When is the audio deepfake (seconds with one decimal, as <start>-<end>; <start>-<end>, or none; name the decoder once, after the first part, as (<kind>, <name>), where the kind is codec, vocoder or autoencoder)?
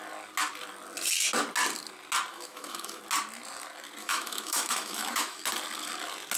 2.3-3.0 (autoencoder, DAC-VAE); 4.0-5.4